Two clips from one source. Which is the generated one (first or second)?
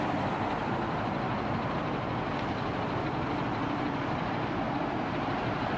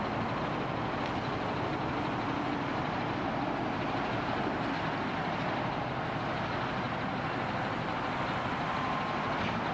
first